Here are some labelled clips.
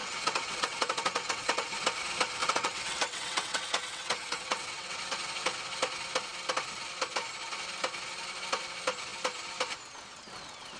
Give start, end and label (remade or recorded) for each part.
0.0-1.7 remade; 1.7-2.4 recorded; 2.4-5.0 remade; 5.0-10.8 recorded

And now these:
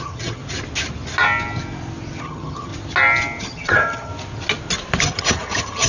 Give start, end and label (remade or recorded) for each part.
0.0-0.4 remade; 0.4-2.2 recorded; 2.2-2.7 remade; 2.7-3.4 recorded; 3.4-4.1 remade; 4.1-5.0 recorded; 5.0-5.9 remade

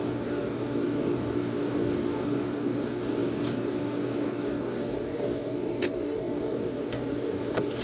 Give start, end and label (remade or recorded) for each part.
0.0-7.8 remade

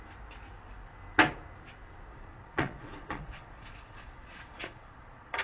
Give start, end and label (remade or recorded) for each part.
0.0-2.1 recorded; 2.1-5.4 remade

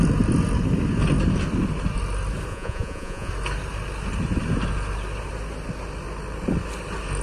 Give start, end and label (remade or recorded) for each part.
0.0-2.5 recorded; 2.5-3.3 remade; 3.3-7.2 recorded